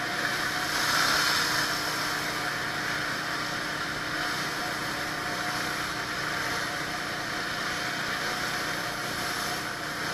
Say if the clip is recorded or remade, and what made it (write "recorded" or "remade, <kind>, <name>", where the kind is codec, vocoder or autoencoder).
recorded